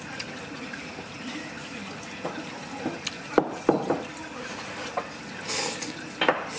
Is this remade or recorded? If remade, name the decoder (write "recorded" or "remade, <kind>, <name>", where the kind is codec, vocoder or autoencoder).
recorded